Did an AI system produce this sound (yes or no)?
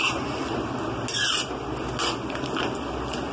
no